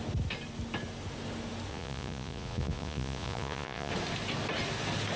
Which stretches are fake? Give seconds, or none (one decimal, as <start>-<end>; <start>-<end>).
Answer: 1.7-3.9